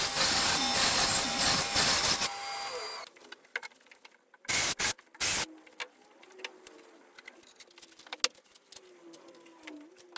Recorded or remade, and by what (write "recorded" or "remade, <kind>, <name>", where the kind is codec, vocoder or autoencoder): recorded